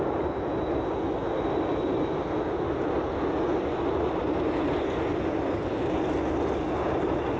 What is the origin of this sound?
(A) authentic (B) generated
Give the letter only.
A